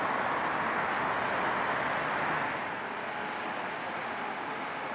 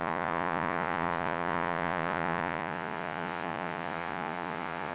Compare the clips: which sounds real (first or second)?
first